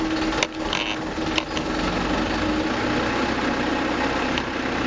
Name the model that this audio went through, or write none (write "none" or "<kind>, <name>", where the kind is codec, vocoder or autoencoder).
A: none